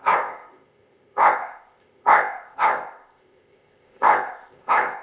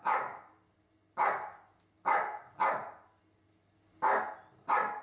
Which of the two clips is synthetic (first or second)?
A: first